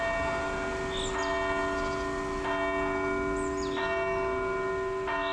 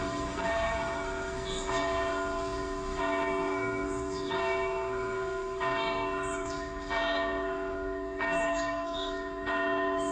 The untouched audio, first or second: first